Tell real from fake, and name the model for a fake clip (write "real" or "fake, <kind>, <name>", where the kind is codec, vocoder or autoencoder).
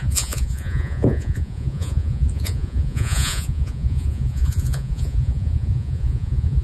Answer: fake, vocoder, Vocos